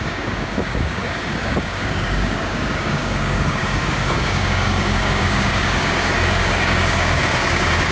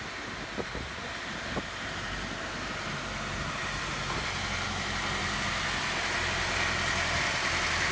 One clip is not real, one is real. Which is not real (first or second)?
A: first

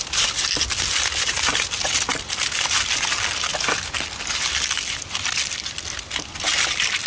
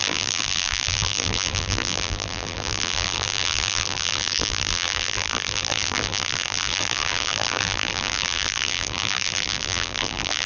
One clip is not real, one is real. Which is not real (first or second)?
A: second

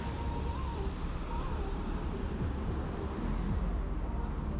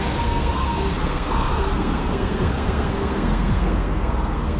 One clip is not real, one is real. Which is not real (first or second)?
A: second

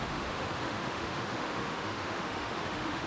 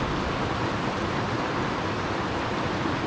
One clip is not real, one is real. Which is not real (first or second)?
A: first